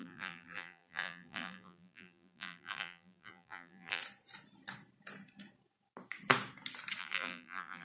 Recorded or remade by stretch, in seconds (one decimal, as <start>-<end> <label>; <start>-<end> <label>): 0.0-4.0 remade; 4.0-7.0 recorded; 7.0-7.8 remade